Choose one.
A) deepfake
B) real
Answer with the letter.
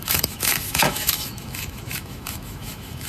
A